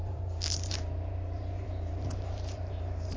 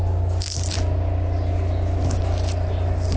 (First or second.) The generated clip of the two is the first